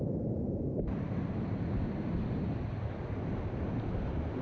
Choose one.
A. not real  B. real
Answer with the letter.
B